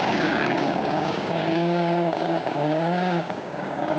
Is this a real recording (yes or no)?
no